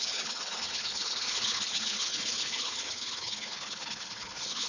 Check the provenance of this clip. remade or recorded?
remade